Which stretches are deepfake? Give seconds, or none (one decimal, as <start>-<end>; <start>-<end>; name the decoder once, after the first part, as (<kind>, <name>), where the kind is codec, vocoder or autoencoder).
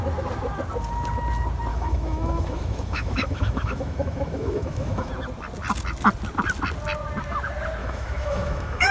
1.7-5.1 (autoencoder, DAC-VAE); 7.8-8.9